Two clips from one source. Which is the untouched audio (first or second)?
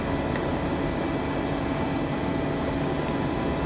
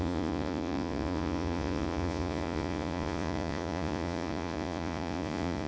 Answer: first